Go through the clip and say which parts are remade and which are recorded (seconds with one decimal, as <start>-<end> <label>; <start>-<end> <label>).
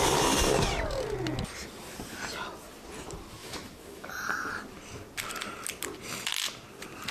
0.0-3.4 recorded; 3.4-4.1 remade; 4.1-7.1 recorded